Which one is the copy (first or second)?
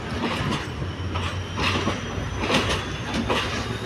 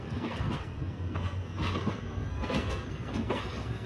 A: second